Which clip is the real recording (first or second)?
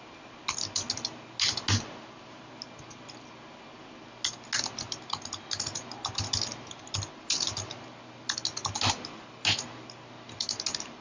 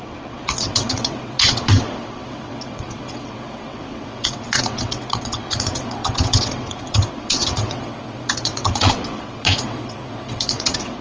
first